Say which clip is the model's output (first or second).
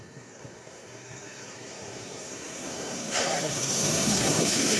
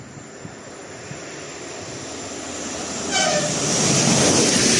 first